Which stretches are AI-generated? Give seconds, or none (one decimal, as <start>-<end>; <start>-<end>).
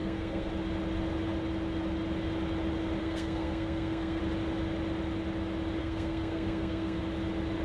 0.0-0.5; 3.0-4.2; 5.8-7.0